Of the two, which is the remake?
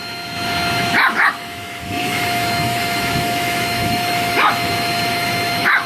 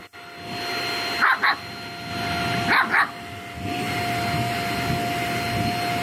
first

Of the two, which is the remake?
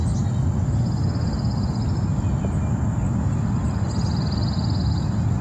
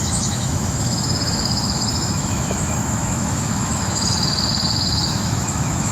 second